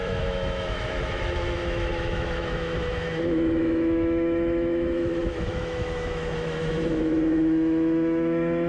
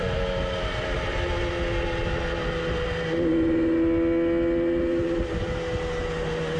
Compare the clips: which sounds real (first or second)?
second